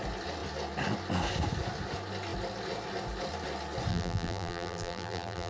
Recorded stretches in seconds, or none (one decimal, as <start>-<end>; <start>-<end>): 0.0-3.9

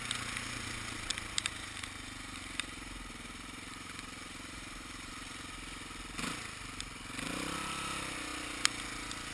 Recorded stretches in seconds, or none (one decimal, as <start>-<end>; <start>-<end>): 0.0-1.1; 5.1-9.3

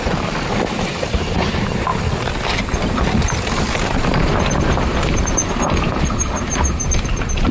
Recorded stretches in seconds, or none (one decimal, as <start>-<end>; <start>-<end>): 1.9-2.6

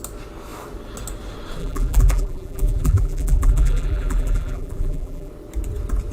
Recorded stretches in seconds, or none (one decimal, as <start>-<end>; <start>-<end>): 0.0-1.6; 5.3-6.1